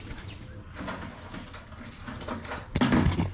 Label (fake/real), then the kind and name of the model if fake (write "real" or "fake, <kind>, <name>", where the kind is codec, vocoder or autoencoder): real